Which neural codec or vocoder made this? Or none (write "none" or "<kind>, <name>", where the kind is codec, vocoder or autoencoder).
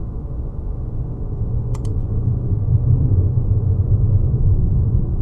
vocoder, Vocos